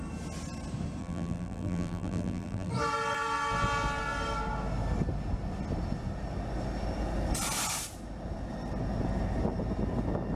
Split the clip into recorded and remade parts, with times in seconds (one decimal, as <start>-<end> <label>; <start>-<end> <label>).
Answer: 0.0-1.0 recorded; 1.0-2.7 remade; 2.7-10.4 recorded